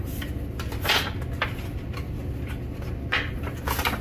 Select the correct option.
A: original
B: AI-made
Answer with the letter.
A